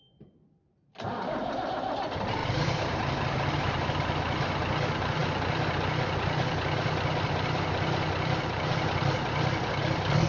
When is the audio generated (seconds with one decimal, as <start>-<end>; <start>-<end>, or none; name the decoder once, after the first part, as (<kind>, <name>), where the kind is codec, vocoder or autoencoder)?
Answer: 2.4-3.1 (vocoder, BigVGAN v2)